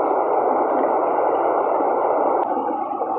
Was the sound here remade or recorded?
recorded